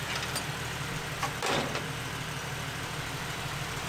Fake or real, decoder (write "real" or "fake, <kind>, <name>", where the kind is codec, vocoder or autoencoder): fake, vocoder, BigVGAN v2